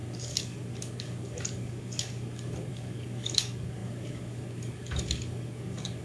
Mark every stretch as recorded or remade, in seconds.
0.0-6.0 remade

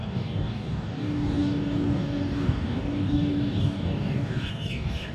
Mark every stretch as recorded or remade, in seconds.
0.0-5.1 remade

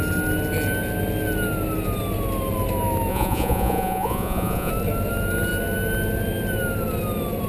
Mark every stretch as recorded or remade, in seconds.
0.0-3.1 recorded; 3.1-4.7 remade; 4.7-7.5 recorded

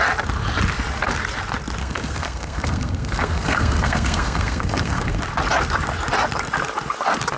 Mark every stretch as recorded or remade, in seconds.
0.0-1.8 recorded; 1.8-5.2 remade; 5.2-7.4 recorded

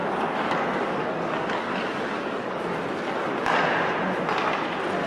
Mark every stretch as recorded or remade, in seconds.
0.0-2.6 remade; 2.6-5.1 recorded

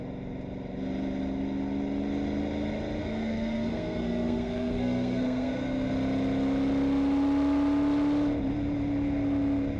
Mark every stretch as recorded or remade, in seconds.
0.0-3.0 recorded; 3.0-5.9 remade; 5.9-9.8 recorded